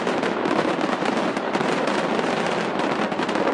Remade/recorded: recorded